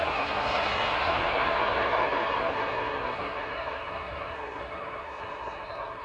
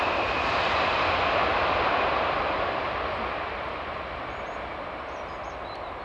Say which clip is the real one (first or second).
second